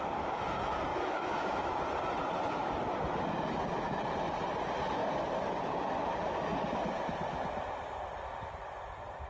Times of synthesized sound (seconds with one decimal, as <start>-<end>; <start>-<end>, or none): 0.9-1.8